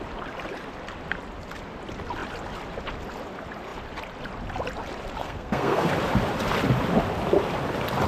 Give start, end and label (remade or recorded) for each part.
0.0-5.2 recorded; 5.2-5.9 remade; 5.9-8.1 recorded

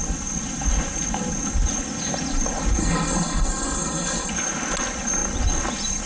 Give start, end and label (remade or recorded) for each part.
0.0-2.8 recorded; 2.8-4.3 remade; 4.3-6.1 recorded

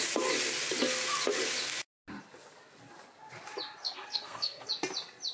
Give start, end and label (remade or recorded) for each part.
0.0-3.8 recorded; 3.8-4.7 remade; 4.7-5.3 recorded

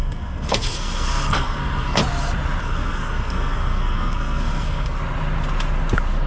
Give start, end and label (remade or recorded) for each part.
0.0-2.0 remade; 2.0-2.6 recorded; 2.6-5.0 remade; 5.0-6.3 recorded

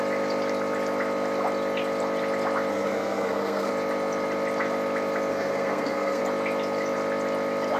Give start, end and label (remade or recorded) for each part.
0.0-2.7 recorded; 2.7-3.7 remade; 3.7-5.3 recorded; 5.3-6.2 remade; 6.2-7.8 recorded

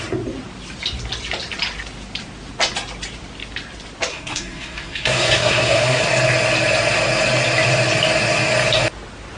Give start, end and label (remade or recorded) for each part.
0.0-4.1 recorded; 4.1-6.0 remade; 6.0-9.4 recorded